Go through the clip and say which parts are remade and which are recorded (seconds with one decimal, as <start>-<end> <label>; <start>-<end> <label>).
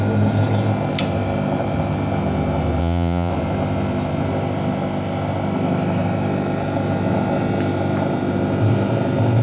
0.0-2.8 recorded; 2.8-3.3 remade; 3.3-9.4 recorded